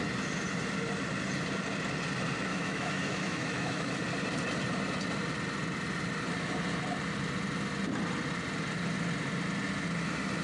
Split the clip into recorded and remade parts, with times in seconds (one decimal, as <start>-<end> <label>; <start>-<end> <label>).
0.0-2.5 recorded; 2.5-3.9 remade; 3.9-10.4 recorded